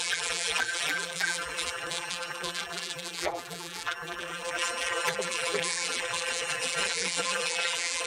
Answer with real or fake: fake